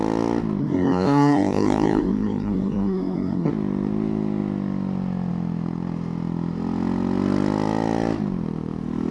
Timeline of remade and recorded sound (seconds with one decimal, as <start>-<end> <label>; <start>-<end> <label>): 0.0-0.6 recorded; 0.6-3.5 remade; 3.5-9.1 recorded